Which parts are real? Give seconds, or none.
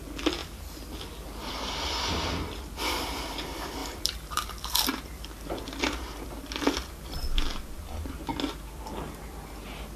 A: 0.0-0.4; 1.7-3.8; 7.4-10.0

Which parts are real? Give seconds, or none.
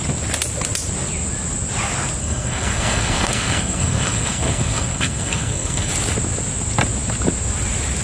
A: 0.0-2.2; 5.9-8.0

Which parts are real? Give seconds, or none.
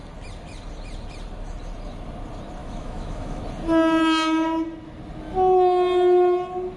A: 0.0-2.6; 3.4-6.8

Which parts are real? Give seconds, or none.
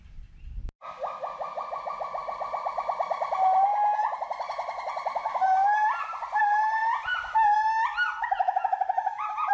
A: 0.0-9.5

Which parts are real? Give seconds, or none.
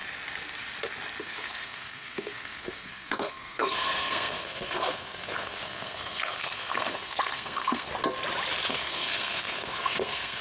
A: 0.0-1.2; 7.9-8.7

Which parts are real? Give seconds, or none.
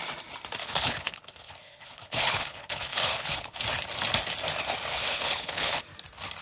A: 0.0-0.6; 3.6-4.9; 5.8-6.4